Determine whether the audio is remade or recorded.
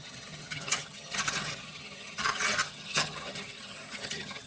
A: remade